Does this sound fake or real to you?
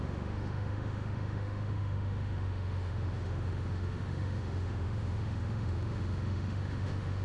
fake